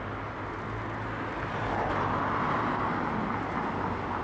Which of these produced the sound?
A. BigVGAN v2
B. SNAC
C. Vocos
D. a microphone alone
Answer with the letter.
D